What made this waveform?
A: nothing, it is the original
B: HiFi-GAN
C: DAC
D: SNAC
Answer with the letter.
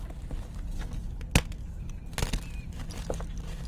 A